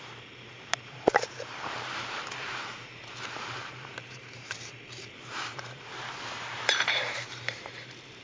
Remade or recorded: remade